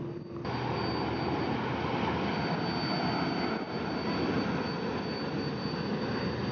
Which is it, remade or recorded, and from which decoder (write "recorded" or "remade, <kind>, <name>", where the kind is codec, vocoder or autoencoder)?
recorded